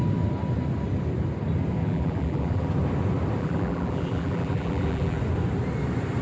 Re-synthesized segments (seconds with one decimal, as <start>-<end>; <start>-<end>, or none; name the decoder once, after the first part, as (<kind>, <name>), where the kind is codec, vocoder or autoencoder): 1.8-2.7 (vocoder, BigVGAN v2); 3.4-5.2